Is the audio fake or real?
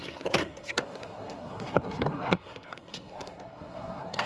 fake